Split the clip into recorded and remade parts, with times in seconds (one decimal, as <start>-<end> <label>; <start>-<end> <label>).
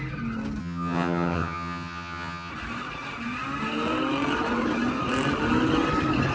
0.0-0.6 recorded; 0.6-2.5 remade; 2.5-6.3 recorded